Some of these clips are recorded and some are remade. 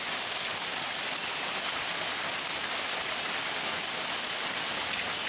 recorded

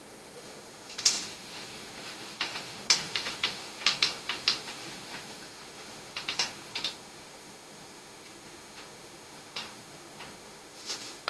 remade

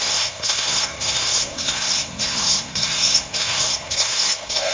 remade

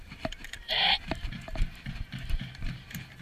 remade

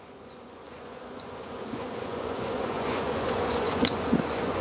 remade